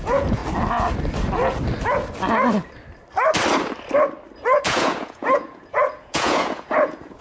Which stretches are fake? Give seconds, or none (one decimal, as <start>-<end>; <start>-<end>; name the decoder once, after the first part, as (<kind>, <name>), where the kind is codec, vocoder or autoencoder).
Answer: 0.0-0.4 (vocoder, Vocos); 4.6-7.2